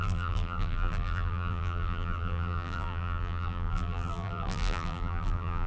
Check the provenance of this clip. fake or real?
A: fake